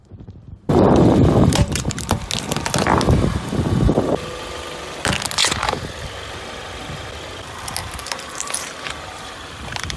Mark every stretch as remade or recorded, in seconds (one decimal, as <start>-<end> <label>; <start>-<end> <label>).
0.0-2.3 remade; 2.3-7.8 recorded; 7.8-10.0 remade